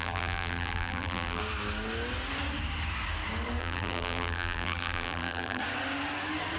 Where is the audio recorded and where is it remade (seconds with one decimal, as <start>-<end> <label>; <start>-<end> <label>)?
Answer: 0.0-1.4 remade; 1.4-3.6 recorded; 3.6-5.6 remade; 5.6-6.6 recorded